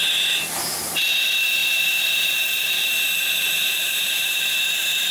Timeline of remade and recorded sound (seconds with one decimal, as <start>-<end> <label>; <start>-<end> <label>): 0.0-1.6 recorded; 1.6-5.1 remade